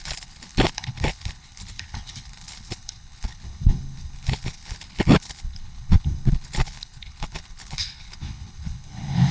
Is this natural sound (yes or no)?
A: no